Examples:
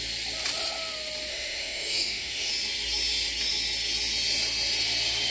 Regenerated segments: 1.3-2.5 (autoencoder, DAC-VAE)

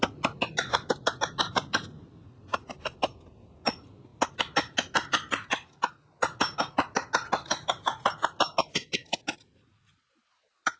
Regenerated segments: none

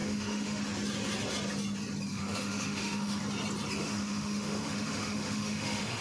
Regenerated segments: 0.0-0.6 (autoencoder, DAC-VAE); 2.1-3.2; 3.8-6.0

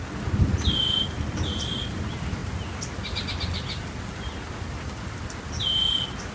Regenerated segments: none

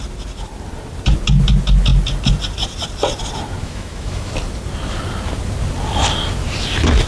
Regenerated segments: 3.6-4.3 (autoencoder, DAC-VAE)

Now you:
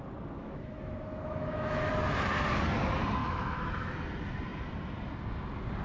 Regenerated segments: 0.4-1.9 (autoencoder, DAC-VAE); 3.2-3.9